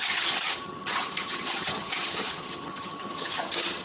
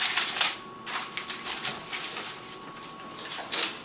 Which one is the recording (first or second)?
second